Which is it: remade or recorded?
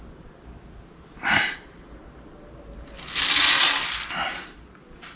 recorded